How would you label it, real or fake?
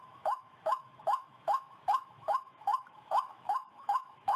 fake